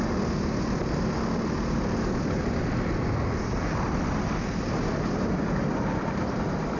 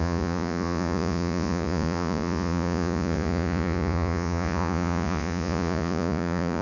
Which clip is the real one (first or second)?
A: first